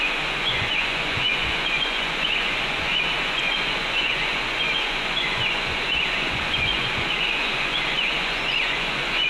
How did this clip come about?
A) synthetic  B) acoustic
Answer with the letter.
A